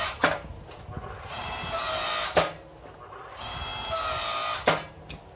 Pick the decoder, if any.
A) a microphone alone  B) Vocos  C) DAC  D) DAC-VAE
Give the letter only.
A